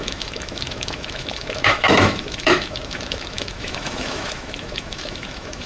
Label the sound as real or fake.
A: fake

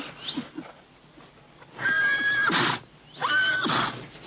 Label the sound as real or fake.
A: real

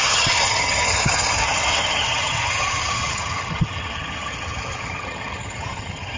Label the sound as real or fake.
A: fake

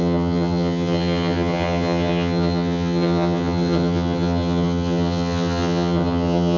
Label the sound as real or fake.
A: fake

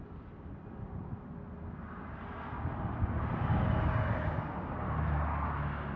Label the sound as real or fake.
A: real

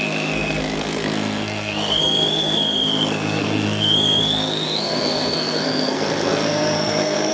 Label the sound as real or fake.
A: fake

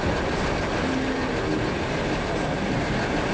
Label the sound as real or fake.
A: real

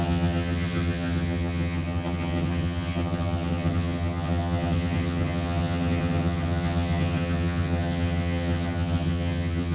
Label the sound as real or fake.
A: fake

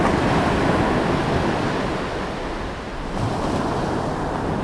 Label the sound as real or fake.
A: real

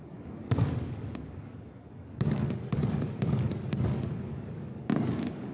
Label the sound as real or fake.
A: fake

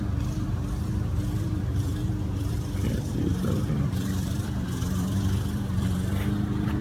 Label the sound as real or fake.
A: fake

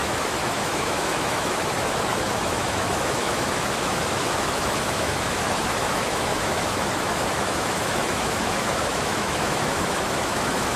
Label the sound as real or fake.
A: fake